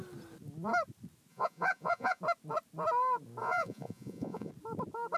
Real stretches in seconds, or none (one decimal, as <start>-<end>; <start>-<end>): 0.0-1.3; 2.2-3.4; 4.5-5.2